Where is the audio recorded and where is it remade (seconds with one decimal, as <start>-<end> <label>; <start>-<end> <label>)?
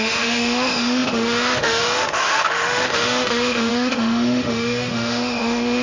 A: 0.0-5.8 remade